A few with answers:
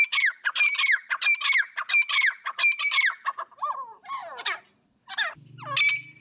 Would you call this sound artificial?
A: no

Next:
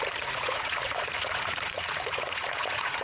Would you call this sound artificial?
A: yes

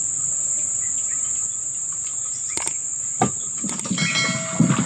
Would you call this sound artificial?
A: no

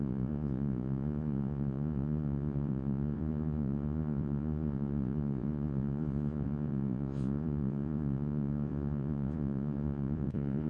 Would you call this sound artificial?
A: yes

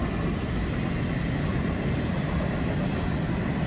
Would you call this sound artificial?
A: no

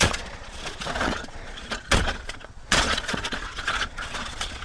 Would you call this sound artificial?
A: yes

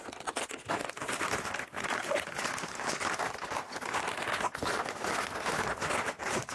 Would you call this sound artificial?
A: no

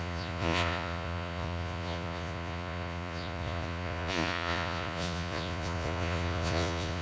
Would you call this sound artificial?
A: yes